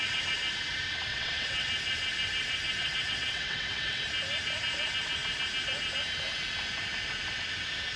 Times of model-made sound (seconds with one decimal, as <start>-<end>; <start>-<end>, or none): 1.1-1.7; 2.8-4.0